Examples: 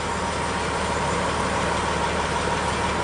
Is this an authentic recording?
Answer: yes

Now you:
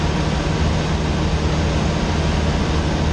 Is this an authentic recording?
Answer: yes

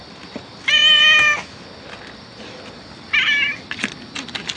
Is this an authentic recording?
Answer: yes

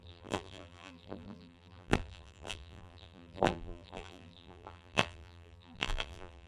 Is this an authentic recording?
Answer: no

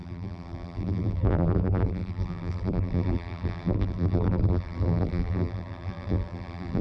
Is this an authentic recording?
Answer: no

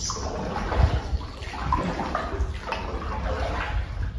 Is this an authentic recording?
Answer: yes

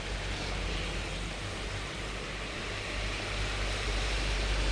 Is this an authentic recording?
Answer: no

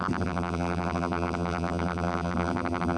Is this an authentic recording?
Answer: no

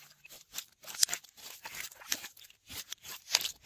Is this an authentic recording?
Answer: yes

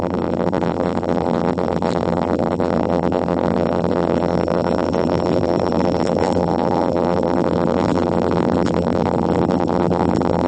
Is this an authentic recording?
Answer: no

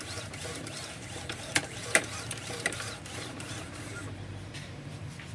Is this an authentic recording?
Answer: no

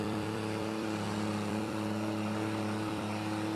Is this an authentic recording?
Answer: no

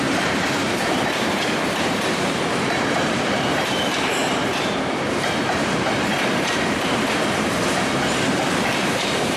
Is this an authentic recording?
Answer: no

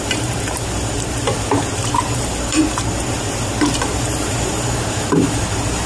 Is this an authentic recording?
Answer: no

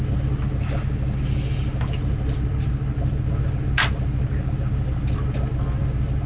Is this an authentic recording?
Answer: yes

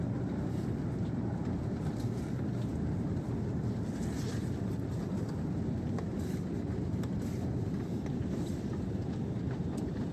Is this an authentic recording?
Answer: yes